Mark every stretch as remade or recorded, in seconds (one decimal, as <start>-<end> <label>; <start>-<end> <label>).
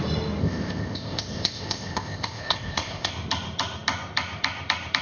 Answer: 0.0-0.4 recorded; 0.4-3.1 remade; 3.1-5.0 recorded